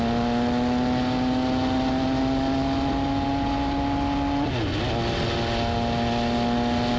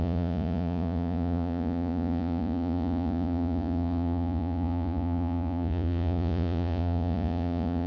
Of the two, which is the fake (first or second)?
second